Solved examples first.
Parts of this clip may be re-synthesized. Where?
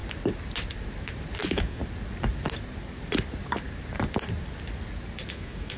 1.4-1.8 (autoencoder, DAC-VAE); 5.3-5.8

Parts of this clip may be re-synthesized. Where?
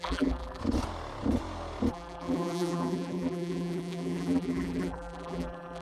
0.0-0.6 (vocoder, BigVGAN v2); 1.9-5.8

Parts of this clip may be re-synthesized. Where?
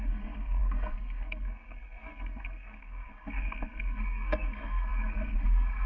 0.0-5.9 (codec, SNAC)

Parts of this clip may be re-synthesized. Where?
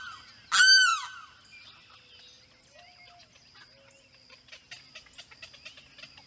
none